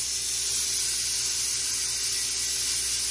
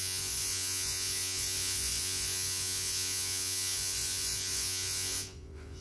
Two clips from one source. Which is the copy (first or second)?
second